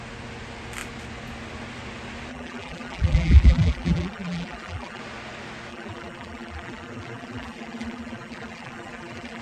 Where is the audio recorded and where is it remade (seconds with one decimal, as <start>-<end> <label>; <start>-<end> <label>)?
0.0-2.3 recorded; 2.3-5.0 remade; 5.0-5.7 recorded; 5.7-9.4 remade

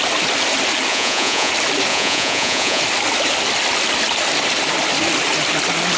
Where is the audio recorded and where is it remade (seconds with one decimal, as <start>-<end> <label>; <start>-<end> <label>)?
0.0-0.9 recorded; 0.9-1.5 remade; 1.5-1.9 recorded; 1.9-2.8 remade; 2.8-6.0 recorded

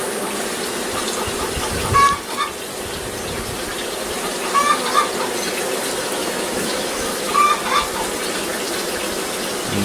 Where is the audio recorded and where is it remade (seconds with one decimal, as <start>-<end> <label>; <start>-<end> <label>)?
0.0-6.2 recorded; 6.2-7.3 remade; 7.3-9.8 recorded

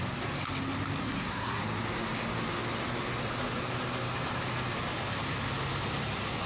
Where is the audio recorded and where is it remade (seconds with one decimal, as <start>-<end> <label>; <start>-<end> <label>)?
0.0-1.0 recorded; 1.0-1.6 remade; 1.6-6.5 recorded